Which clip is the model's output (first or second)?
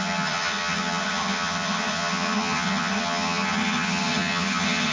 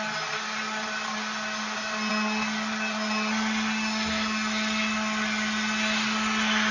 first